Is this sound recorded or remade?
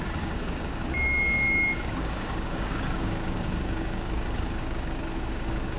remade